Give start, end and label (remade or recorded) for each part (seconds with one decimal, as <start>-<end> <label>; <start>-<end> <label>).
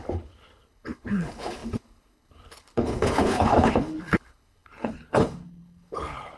0.0-6.4 remade